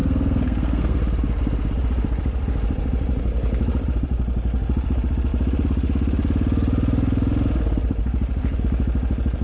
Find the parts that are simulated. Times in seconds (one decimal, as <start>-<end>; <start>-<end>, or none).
0.0-1.0